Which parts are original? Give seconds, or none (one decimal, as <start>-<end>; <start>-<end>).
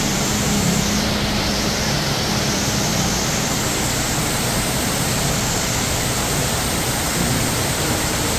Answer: 2.9-4.5